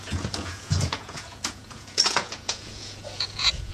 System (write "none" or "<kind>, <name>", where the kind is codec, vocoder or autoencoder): vocoder, Vocos